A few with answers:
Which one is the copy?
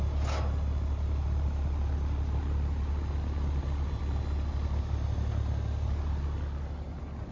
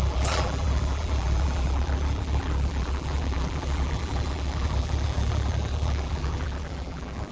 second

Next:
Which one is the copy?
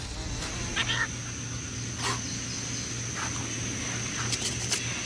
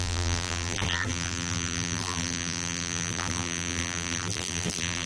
second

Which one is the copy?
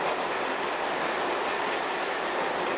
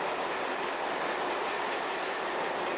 first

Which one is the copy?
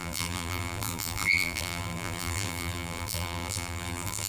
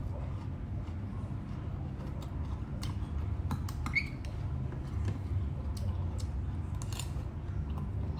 first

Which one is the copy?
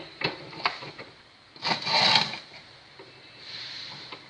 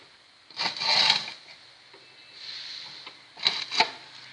first